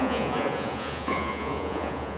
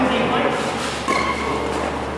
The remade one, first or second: first